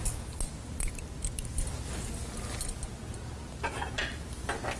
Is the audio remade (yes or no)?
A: no